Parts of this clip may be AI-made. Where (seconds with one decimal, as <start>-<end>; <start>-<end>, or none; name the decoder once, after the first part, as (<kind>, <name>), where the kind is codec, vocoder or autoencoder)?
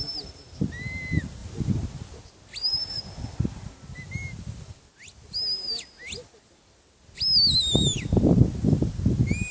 none